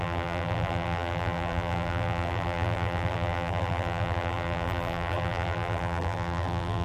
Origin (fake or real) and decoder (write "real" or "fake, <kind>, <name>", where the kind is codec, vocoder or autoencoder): fake, vocoder, BigVGAN v2